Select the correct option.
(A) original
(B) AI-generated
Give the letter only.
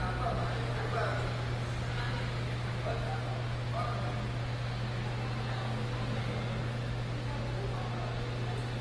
A